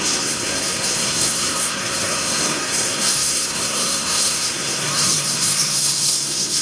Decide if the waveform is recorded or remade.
remade